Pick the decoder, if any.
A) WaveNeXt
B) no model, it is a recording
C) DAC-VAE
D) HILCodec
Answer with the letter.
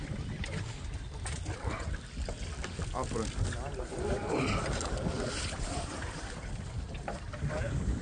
B